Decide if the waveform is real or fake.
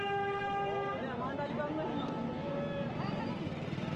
real